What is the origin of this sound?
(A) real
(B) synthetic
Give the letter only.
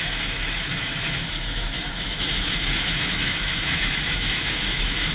B